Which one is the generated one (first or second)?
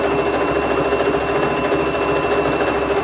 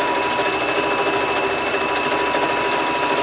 second